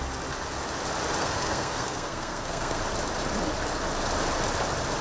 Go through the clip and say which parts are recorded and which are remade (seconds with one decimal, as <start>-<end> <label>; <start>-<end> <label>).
0.0-1.2 recorded; 1.2-2.8 remade; 2.8-5.0 recorded